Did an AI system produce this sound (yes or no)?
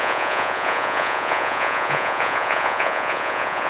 yes